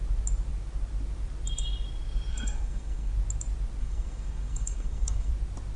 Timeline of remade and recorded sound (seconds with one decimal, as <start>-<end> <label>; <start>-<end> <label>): 0.0-2.3 recorded; 2.3-3.1 remade; 3.1-3.8 recorded; 3.8-5.3 remade; 5.3-5.8 recorded